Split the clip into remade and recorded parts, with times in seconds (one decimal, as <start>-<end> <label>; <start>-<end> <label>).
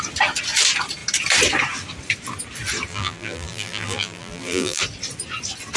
0.0-2.9 recorded; 2.9-4.8 remade; 4.8-5.8 recorded